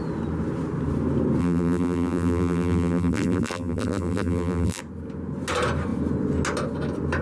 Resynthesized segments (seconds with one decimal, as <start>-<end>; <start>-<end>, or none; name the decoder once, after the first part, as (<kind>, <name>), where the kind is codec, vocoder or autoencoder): 1.4-4.8 (vocoder, BigVGAN v2)